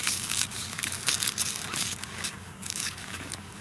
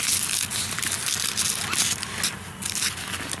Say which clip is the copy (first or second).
first